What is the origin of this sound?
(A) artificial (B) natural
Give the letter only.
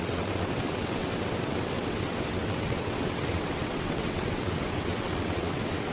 A